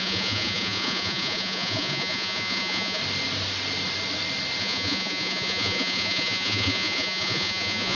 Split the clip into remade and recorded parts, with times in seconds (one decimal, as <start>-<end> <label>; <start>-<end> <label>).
0.0-3.0 remade; 3.0-4.6 recorded; 4.6-7.9 remade